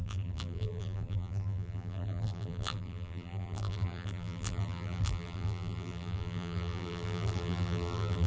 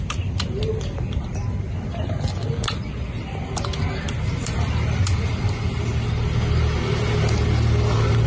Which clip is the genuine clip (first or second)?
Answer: second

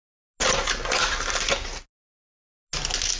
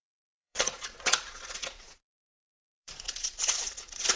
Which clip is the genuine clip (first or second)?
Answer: first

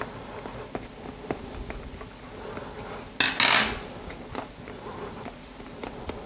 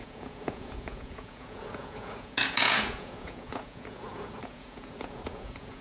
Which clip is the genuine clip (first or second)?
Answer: first